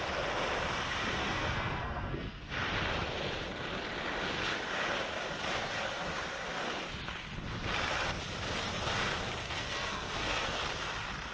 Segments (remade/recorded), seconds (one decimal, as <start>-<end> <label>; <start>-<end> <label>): 0.0-1.2 recorded; 1.2-2.5 remade; 2.5-9.4 recorded; 9.4-10.6 remade; 10.6-11.3 recorded